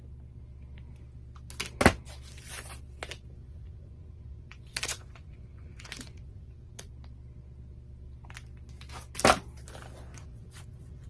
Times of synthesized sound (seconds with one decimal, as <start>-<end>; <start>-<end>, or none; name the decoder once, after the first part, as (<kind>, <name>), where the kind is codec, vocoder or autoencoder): 3.4-6.9 (vocoder, Vocos); 10.1-11.1